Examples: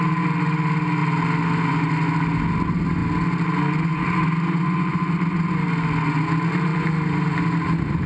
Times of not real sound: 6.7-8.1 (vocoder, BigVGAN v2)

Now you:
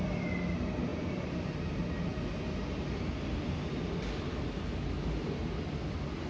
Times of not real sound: 0.9-1.5 (vocoder, BigVGAN v2)

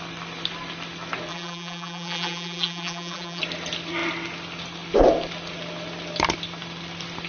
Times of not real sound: 1.3-3.4 (vocoder, BigVGAN v2)

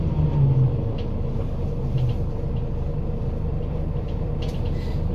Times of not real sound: 3.5-5.1 (vocoder, BigVGAN v2)

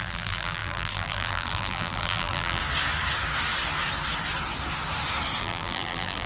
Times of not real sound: 0.0-2.6 (vocoder, BigVGAN v2); 5.4-6.3

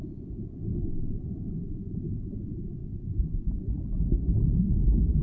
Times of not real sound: none

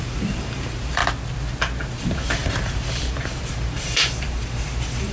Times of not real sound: 0.0-1.0 (vocoder, BigVGAN v2); 2.0-5.1